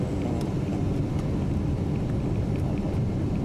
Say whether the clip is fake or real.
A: real